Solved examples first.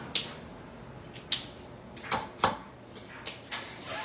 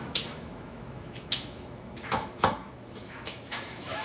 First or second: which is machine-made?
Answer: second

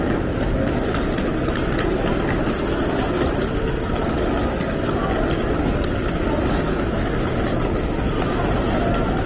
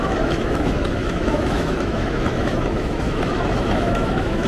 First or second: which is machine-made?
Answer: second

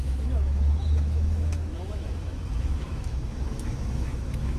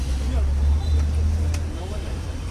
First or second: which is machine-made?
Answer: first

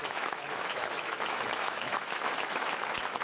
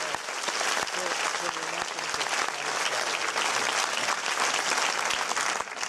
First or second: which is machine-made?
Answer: first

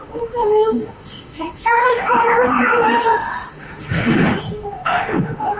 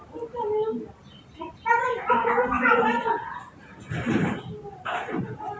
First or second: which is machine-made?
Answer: first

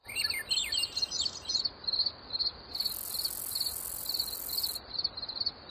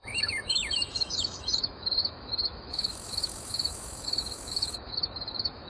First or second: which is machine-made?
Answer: second